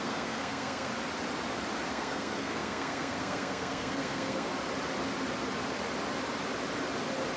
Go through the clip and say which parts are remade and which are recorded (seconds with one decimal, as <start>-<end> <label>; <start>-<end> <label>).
0.0-0.9 remade; 0.9-1.9 recorded; 1.9-4.5 remade; 4.5-7.4 recorded